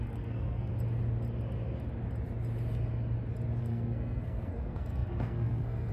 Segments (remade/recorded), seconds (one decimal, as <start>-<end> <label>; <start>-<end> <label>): 0.0-0.7 remade; 0.7-3.6 recorded; 3.6-5.9 remade

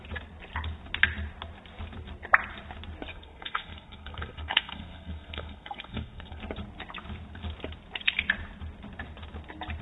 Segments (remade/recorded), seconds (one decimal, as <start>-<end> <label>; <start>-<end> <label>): 0.0-3.1 recorded; 3.1-6.4 remade; 6.4-9.8 recorded

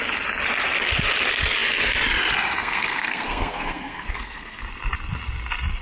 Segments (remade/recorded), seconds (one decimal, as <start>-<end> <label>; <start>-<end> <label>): 0.0-2.6 recorded; 2.6-4.6 remade; 4.6-5.8 recorded

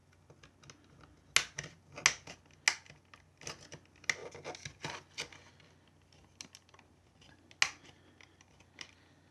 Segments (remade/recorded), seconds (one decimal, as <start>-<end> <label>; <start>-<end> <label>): 0.0-9.3 recorded